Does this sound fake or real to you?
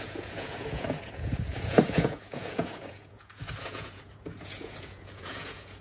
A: fake